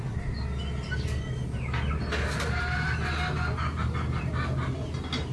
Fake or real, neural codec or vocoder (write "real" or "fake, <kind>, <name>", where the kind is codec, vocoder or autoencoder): real